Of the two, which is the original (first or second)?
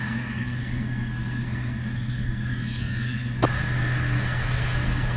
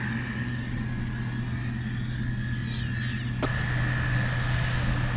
second